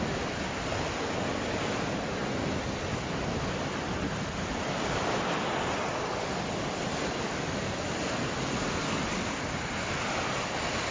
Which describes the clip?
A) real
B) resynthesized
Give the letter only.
A